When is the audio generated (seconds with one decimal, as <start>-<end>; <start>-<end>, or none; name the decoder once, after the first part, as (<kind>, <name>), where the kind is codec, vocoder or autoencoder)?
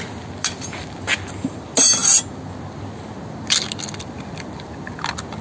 none